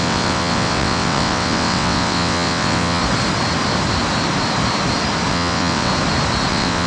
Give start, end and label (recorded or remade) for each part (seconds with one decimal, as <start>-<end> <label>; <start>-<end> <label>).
0.0-3.0 remade; 3.0-5.3 recorded; 5.3-5.9 remade; 5.9-6.5 recorded; 6.5-6.9 remade